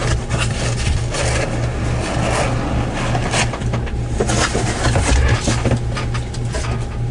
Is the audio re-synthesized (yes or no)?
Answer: no